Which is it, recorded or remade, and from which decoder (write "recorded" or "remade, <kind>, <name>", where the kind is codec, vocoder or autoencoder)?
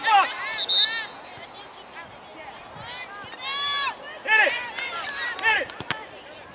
recorded